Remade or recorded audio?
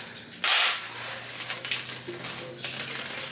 recorded